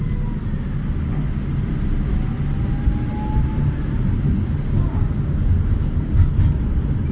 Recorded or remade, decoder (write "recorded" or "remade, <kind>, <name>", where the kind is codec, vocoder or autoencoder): recorded